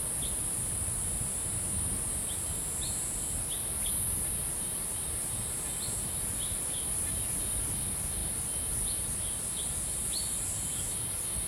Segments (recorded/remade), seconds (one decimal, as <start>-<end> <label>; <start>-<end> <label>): 0.0-11.5 recorded